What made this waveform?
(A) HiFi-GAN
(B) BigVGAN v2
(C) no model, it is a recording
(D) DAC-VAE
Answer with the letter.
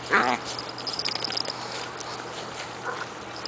C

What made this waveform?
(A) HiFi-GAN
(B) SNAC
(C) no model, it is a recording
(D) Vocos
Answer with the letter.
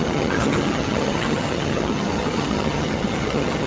A